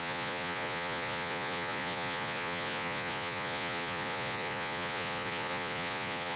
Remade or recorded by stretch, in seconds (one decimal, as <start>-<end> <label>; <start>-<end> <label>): 0.0-6.4 remade